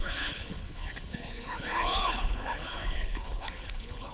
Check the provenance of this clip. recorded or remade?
remade